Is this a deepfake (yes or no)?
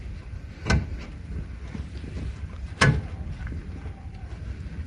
no